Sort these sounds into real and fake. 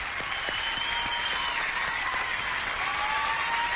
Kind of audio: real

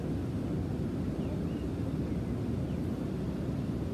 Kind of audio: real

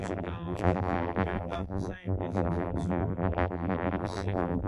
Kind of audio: fake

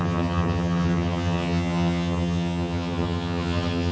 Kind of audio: fake